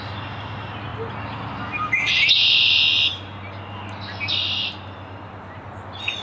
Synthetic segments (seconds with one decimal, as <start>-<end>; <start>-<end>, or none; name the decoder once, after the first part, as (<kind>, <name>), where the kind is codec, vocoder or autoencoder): none